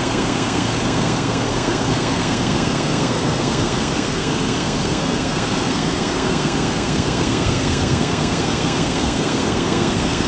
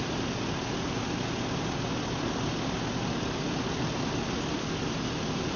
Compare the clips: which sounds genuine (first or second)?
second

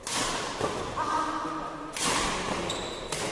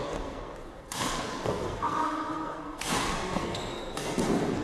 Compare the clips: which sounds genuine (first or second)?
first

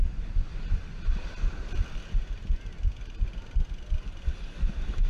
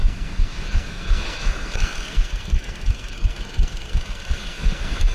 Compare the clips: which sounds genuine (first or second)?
first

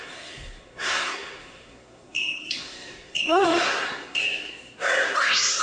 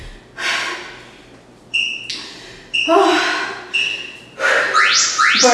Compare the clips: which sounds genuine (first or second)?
second